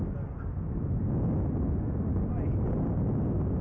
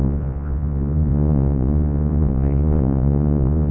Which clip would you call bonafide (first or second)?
first